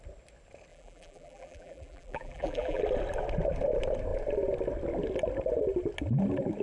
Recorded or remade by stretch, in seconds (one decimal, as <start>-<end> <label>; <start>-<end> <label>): 0.0-0.7 recorded; 0.7-2.8 remade; 2.8-6.6 recorded